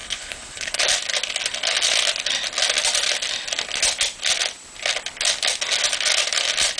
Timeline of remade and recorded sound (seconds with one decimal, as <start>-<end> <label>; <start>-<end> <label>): 0.0-0.8 remade; 0.8-6.8 recorded